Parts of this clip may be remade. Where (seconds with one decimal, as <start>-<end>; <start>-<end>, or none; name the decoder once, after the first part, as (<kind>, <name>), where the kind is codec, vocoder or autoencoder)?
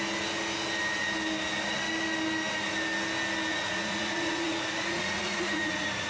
3.5-6.1 (vocoder, Vocos)